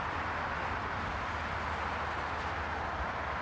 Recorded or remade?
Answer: recorded